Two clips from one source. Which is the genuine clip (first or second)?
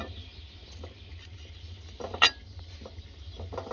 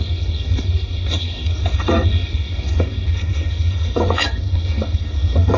first